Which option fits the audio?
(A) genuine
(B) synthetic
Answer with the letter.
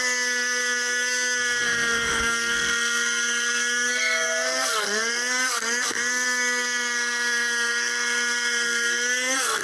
B